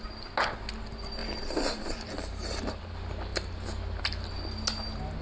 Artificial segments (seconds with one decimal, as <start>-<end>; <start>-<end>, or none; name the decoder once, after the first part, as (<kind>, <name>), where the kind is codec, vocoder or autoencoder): 1.2-2.8 (vocoder, BigVGAN v2)